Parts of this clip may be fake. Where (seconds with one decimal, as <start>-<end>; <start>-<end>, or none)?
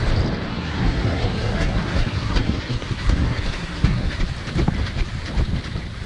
0.5-4.2